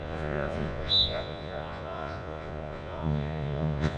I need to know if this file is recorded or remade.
remade